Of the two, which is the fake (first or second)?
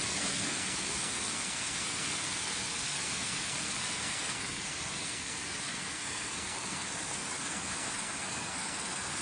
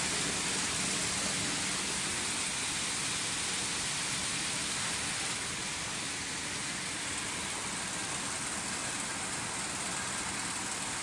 first